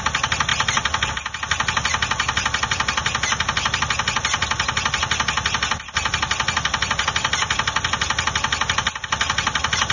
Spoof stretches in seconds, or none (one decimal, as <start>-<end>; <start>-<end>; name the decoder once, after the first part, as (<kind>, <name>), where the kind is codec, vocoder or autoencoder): none